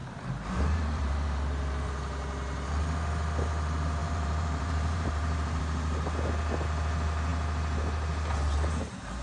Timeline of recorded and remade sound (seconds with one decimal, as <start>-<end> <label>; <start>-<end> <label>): 0.0-1.9 remade; 1.9-4.0 recorded; 4.0-5.6 remade; 5.6-9.2 recorded